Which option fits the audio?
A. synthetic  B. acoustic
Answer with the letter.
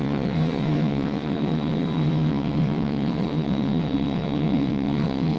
A